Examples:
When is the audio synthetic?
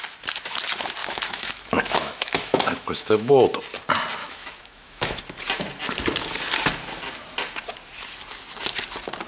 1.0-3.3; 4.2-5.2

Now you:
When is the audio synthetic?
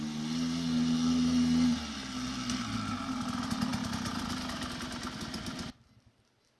none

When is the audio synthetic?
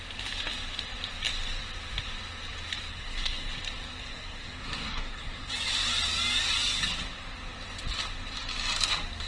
2.9-3.5; 4.0-5.5